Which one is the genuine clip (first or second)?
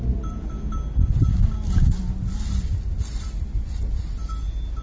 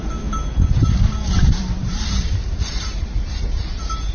first